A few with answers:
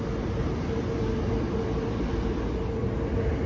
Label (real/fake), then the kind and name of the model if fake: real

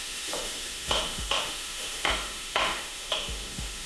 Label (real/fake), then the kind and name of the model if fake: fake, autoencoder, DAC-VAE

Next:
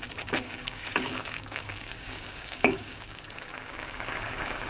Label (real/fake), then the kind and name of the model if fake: fake, codec, DAC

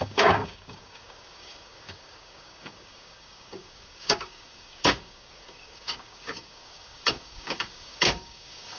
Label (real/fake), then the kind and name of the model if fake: fake, codec, DAC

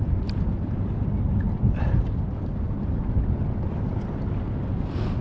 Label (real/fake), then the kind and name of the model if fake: real